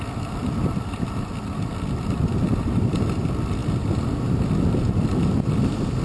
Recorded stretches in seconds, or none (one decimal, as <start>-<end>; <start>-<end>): 0.0-6.0